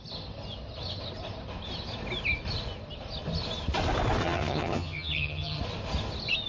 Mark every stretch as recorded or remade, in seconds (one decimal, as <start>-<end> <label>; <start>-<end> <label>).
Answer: 0.0-4.2 recorded; 4.2-5.6 remade; 5.6-6.5 recorded